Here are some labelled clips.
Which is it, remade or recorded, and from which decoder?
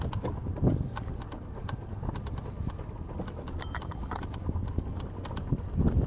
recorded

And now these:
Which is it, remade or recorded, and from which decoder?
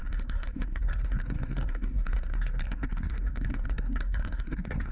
remade, codec, SNAC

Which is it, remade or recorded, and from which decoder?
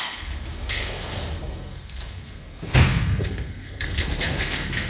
remade, codec, SNAC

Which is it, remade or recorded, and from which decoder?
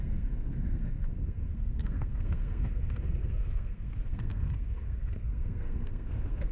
remade, codec, SNAC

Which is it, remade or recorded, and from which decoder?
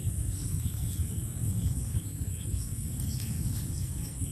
remade, codec, SNAC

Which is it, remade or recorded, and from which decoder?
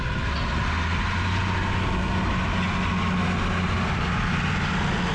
recorded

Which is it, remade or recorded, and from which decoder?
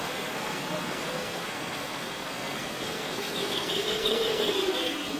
remade, codec, SNAC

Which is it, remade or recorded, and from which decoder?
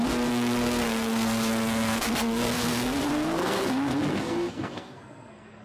remade, codec, SNAC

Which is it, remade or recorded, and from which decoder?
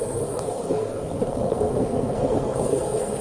remade, codec, SNAC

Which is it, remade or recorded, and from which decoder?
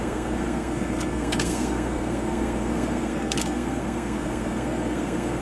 remade, codec, SNAC